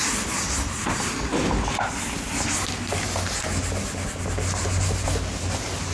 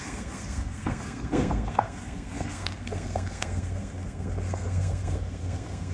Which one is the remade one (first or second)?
second